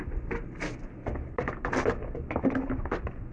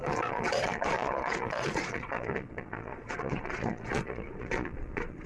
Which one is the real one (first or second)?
first